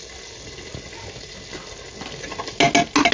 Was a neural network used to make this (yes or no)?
no